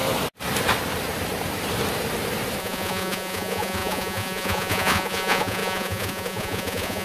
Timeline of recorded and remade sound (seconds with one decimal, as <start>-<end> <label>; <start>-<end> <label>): 0.0-2.6 recorded; 2.6-7.0 remade